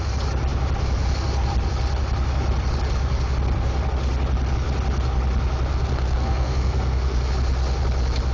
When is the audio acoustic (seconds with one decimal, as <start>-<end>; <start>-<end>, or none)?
0.0-5.7; 7.2-8.3